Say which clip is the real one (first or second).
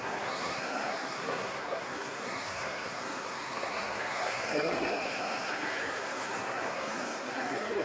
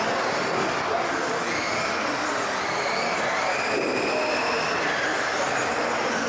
second